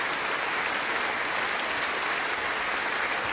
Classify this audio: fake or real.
real